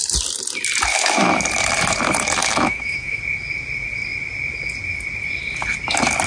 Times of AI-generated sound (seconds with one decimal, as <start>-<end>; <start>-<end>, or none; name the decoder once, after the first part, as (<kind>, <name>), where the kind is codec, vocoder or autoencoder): 0.9-1.4 (autoencoder, DAC-VAE); 2.4-3.2